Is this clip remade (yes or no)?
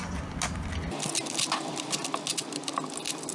no